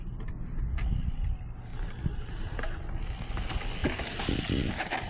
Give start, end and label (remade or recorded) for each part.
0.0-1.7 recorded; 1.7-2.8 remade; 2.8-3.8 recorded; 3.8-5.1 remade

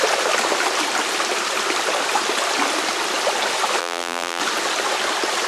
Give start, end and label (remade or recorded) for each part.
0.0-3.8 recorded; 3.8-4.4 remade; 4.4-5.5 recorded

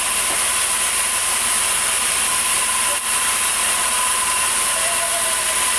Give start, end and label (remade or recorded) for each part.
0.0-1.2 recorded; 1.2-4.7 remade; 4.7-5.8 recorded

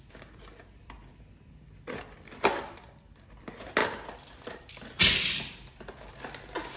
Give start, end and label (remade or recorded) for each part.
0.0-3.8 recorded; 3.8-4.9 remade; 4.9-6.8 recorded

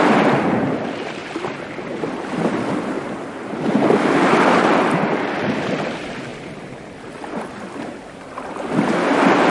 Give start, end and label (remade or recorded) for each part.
0.0-1.2 remade; 1.2-2.1 recorded; 2.1-9.5 remade

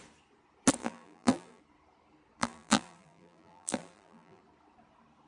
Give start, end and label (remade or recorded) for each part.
0.0-0.8 recorded; 0.8-1.6 remade; 1.6-2.4 recorded; 2.4-4.4 remade; 4.4-5.3 recorded

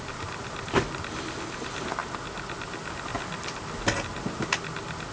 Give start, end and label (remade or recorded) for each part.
0.0-5.1 recorded

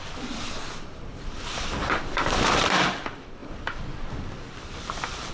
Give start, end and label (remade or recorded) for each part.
0.0-1.1 recorded; 1.1-3.0 remade; 3.0-3.4 recorded; 3.4-5.3 remade